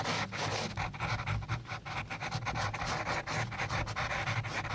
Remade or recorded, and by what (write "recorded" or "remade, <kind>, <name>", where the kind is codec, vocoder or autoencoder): recorded